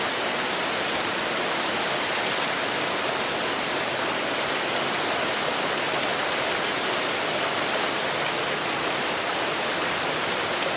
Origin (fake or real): real